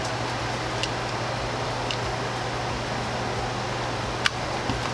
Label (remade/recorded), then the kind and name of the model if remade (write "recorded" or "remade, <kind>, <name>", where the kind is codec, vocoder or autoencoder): recorded